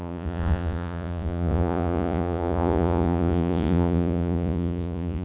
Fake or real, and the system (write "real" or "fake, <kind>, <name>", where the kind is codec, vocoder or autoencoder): fake, vocoder, Vocos